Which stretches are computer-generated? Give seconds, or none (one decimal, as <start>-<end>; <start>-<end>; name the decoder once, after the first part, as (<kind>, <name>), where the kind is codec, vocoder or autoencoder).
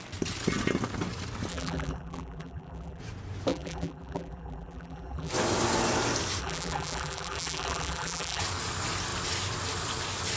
1.5-3.0 (vocoder, BigVGAN v2); 3.5-5.3; 6.4-8.4